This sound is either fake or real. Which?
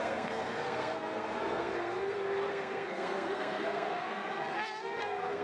fake